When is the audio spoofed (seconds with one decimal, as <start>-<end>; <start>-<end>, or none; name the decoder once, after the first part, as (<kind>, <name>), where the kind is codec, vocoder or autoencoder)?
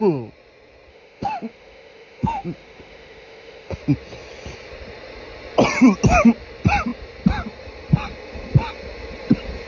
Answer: 0.9-3.8 (autoencoder, DAC-VAE)